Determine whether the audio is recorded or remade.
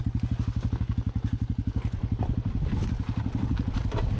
recorded